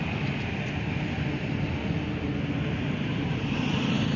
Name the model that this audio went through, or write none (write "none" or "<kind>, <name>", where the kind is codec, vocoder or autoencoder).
none